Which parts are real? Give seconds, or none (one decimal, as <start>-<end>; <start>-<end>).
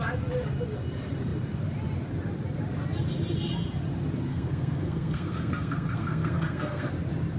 0.0-4.3; 6.9-7.4